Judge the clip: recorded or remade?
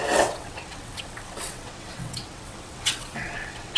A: remade